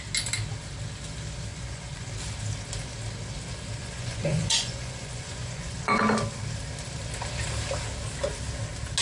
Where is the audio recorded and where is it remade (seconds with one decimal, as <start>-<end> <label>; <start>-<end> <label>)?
0.0-1.5 recorded; 1.5-2.1 remade; 2.1-3.8 recorded; 3.8-6.0 remade; 6.0-9.0 recorded